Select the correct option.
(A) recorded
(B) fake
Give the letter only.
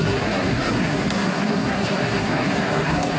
B